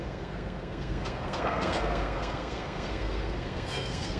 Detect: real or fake fake